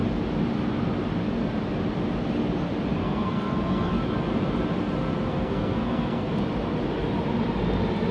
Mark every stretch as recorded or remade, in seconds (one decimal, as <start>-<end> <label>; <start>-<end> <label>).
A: 0.0-3.0 recorded; 3.0-3.9 remade; 3.9-5.3 recorded; 5.3-6.3 remade; 6.3-8.1 recorded